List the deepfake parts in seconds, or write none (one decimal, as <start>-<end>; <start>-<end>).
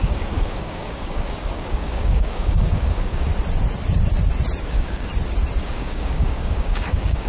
0.0-3.3; 4.6-5.1; 5.6-7.3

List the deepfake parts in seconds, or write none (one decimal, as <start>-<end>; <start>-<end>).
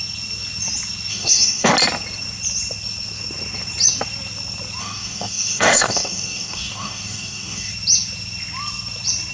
1.1-1.7; 4.8-7.7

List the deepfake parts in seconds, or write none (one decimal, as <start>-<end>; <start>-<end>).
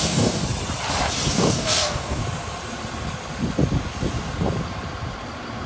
0.0-0.4; 1.3-2.2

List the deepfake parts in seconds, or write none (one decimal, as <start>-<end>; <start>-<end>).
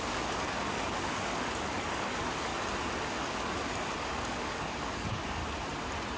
0.0-2.5; 3.2-5.4